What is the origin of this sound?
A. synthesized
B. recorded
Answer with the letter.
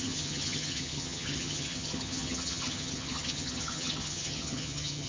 A